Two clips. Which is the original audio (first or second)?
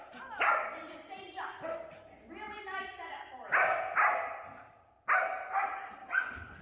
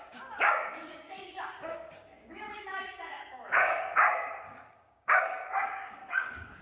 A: first